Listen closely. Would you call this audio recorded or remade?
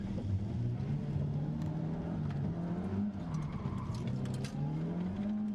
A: recorded